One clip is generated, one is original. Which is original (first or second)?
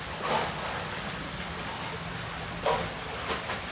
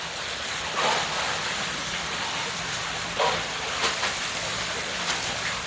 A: first